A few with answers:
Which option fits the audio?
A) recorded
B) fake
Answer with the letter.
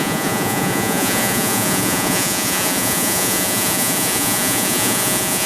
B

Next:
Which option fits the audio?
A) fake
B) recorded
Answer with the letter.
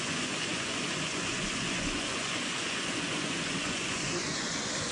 A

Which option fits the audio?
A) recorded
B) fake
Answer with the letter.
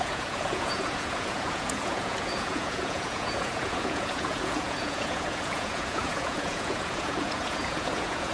B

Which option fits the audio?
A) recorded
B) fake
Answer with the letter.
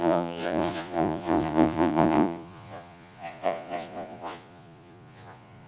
B